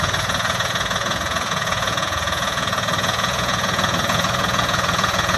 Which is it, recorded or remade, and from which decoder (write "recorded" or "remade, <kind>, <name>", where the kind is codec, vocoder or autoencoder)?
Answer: remade, vocoder, Vocos